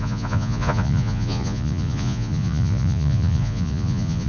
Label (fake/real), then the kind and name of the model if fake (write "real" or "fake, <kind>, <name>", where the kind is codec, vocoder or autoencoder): fake, vocoder, Vocos